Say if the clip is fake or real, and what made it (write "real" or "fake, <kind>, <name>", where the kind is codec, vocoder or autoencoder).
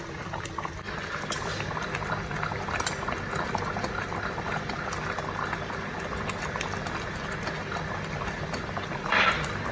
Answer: real